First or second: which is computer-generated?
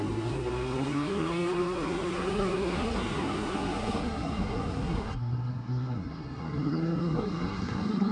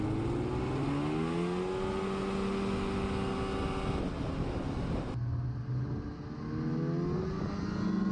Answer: first